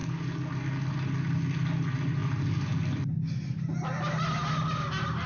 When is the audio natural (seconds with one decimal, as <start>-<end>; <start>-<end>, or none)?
0.0-5.3